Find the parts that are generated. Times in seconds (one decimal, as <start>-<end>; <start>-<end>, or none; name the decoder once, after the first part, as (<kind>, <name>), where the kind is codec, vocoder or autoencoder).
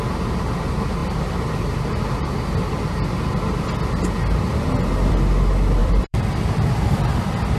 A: 5.8-7.1 (vocoder, BigVGAN v2)